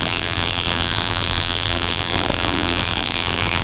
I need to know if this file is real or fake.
fake